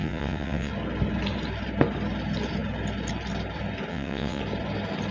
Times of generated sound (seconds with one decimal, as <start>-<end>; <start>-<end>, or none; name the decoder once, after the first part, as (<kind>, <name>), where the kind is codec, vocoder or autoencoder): 0.0-0.7 (vocoder, WaveNeXt); 3.9-4.4